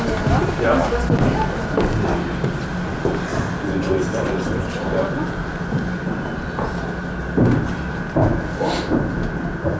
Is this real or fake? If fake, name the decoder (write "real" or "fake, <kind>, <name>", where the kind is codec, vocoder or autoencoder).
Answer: real